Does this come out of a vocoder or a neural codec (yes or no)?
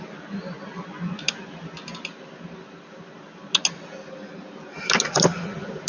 no